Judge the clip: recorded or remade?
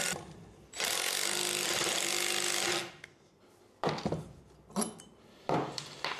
recorded